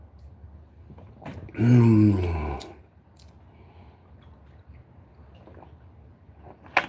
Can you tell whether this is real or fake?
real